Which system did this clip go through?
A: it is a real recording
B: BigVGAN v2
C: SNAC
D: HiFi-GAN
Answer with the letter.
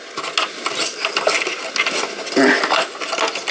A